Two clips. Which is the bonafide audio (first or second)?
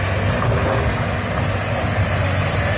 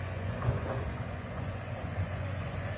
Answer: first